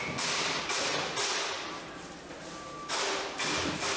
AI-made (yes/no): no